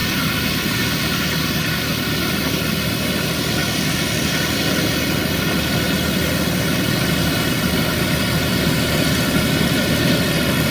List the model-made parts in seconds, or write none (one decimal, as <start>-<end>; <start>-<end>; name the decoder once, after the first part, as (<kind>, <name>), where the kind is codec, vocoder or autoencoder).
none